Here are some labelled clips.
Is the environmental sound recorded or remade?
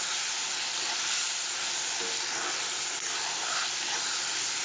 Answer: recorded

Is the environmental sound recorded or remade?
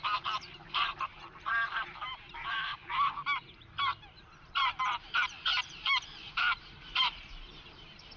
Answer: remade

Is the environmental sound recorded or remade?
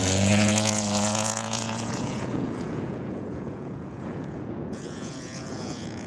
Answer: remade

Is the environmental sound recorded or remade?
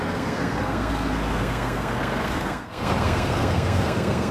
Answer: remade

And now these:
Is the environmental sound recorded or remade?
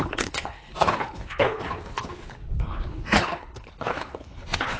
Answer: remade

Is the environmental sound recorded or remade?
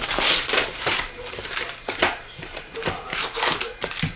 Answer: remade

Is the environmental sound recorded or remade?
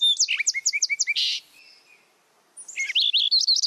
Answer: recorded